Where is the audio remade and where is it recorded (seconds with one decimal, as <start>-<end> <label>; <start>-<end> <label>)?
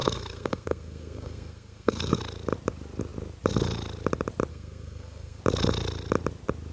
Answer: 0.0-2.2 remade; 2.2-4.5 recorded; 4.5-5.4 remade; 5.4-6.7 recorded